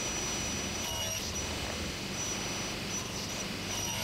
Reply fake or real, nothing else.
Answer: real